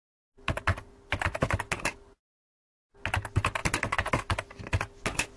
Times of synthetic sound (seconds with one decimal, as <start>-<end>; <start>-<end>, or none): none